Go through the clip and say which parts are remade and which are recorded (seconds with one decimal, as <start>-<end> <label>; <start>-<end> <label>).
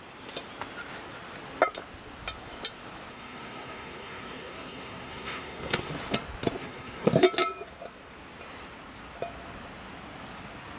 0.0-3.1 recorded; 3.1-5.9 remade; 5.9-6.6 recorded; 6.6-7.1 remade; 7.1-10.8 recorded